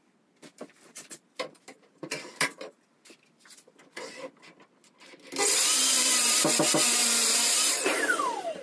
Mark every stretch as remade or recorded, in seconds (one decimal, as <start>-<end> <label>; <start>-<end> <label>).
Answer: 0.0-0.9 recorded; 0.9-2.8 remade; 2.8-5.8 recorded; 5.8-6.4 remade; 6.4-7.0 recorded; 7.0-8.6 remade